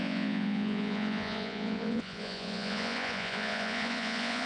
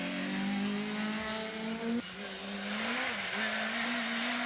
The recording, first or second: second